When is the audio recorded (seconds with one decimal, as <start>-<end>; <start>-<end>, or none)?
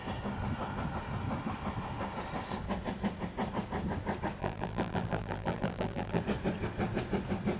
0.0-4.4; 6.2-7.6